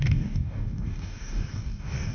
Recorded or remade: remade